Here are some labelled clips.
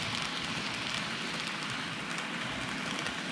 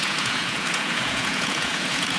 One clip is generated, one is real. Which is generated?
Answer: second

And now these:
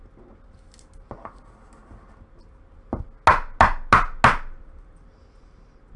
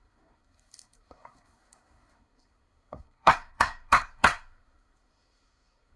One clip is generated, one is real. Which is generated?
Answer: second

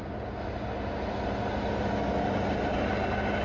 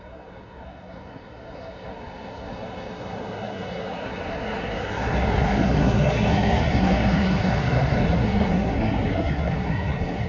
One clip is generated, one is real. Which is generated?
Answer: second